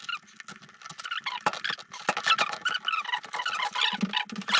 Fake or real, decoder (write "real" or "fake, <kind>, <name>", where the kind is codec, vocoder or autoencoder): real